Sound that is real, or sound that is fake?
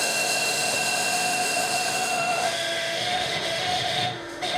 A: fake